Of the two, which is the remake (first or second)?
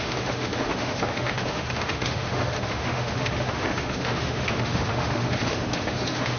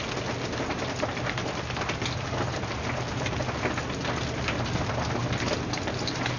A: first